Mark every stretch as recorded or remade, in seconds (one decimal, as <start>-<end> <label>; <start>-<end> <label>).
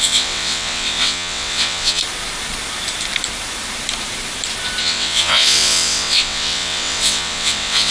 0.0-2.0 remade; 2.0-4.8 recorded; 4.8-7.9 remade